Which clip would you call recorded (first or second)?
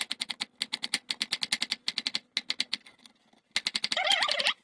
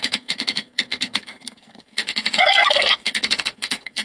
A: first